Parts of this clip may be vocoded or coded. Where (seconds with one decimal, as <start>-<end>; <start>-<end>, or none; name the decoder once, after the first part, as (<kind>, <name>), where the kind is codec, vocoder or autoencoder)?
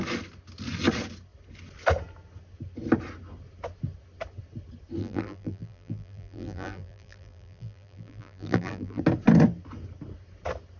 5.0-9.0 (vocoder, BigVGAN v2)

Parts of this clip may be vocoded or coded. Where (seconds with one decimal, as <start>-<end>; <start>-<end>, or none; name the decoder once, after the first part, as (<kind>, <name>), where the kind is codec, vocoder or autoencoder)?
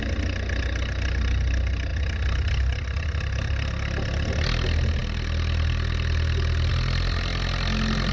none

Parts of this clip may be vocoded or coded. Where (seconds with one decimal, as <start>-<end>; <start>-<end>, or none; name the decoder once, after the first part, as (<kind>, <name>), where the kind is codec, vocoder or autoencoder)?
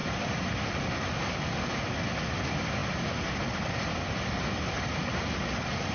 0.0-1.2 (vocoder, BigVGAN v2)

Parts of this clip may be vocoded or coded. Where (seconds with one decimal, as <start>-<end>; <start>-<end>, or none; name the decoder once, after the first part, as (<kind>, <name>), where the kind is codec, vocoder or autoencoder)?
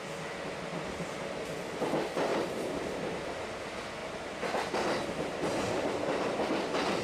2.3-3.1 (vocoder, BigVGAN v2); 4.0-4.7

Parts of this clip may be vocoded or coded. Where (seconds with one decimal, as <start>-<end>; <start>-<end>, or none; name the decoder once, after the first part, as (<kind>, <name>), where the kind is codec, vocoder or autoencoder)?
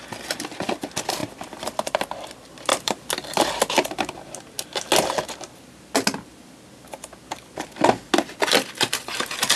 1.2-2.3 (vocoder, BigVGAN v2); 2.7-3.4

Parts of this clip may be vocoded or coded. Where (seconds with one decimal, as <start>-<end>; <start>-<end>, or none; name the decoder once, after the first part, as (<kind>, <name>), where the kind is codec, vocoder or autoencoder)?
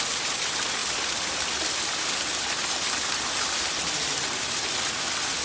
0.8-4.0 (vocoder, BigVGAN v2)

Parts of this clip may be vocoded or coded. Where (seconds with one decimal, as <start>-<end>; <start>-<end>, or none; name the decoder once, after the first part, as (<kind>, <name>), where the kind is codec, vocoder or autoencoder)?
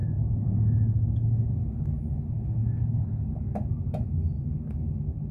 0.0-0.6 (vocoder, BigVGAN v2)